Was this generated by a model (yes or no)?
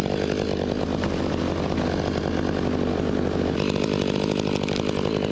no